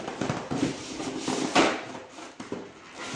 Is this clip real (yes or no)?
yes